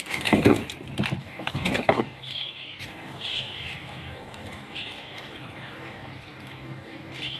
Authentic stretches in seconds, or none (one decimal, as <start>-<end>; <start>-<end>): 0.6-1.2